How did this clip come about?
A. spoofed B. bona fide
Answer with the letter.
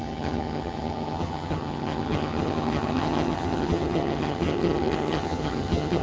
A